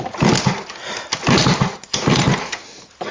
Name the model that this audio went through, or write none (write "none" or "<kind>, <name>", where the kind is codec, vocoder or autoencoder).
none